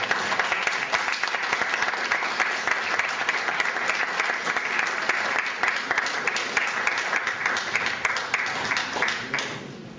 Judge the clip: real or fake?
real